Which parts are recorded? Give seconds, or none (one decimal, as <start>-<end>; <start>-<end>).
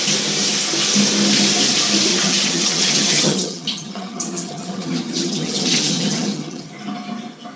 0.0-2.1; 6.7-7.6